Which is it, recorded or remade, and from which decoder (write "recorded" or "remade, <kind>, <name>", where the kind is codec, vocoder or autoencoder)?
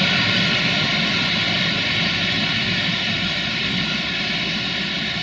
recorded